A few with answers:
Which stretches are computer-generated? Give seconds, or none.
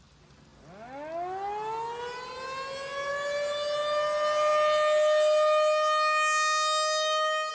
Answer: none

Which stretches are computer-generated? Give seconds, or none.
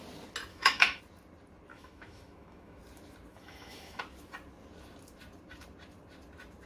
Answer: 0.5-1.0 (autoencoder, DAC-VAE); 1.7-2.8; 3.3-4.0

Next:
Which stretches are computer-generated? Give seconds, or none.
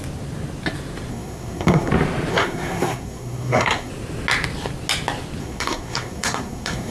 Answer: 1.1-1.9 (codec, SNAC); 2.3-3.9; 5.4-6.9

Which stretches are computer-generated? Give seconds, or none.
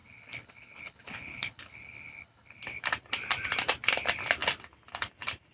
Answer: 0.0-2.6 (codec, HILCodec)